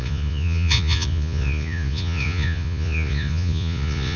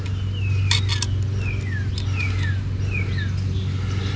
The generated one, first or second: first